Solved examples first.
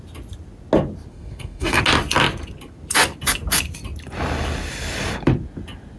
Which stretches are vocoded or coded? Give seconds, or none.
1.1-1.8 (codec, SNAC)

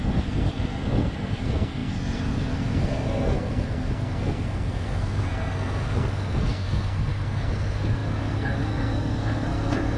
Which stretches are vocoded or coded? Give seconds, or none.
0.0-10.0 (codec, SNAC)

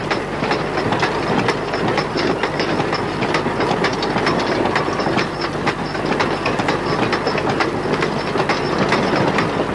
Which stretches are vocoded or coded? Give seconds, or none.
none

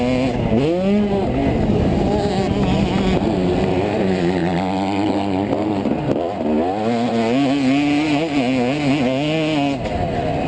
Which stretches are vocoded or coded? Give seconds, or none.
none